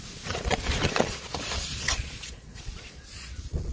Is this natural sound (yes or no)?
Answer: no